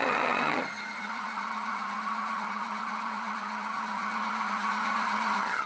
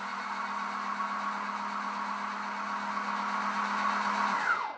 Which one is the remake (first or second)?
first